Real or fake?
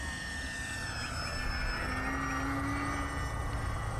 real